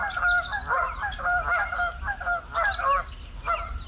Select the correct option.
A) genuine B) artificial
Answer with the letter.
A